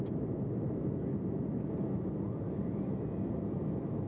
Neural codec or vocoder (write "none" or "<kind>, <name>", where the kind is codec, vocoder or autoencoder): none